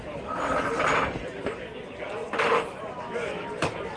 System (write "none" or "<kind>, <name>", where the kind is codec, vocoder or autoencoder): none